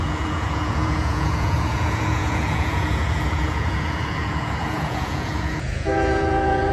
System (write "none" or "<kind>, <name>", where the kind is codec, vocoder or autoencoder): vocoder, Vocos